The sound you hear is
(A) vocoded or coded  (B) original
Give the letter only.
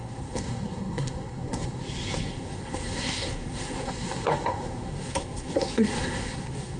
A